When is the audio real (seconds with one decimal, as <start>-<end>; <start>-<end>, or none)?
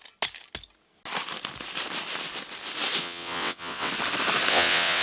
0.0-3.0; 3.9-4.5